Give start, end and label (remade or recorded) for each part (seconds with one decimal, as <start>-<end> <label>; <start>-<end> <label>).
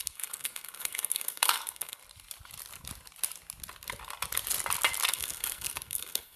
0.0-2.0 remade; 2.0-5.1 recorded; 5.1-6.4 remade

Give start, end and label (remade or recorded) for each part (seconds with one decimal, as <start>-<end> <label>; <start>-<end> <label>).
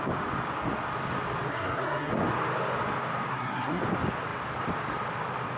0.0-1.5 recorded; 1.5-2.1 remade; 2.1-3.3 recorded; 3.3-3.8 remade; 3.8-5.6 recorded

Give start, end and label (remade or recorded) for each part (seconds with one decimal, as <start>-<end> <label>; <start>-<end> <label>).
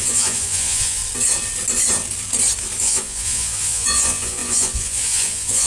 0.0-1.0 remade; 1.0-2.8 recorded; 2.8-5.7 remade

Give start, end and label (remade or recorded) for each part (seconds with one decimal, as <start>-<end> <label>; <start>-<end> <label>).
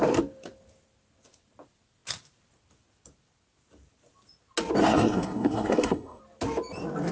0.0-4.8 recorded; 4.8-6.2 remade; 6.2-7.1 recorded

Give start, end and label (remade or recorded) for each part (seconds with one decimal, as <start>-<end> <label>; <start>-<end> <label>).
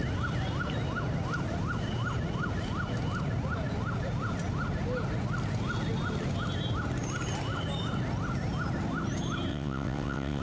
0.0-9.5 recorded; 9.5-10.4 remade